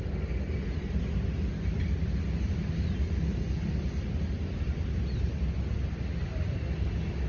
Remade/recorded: recorded